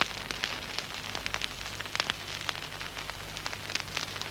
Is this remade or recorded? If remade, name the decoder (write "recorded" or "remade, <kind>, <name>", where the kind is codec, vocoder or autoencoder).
recorded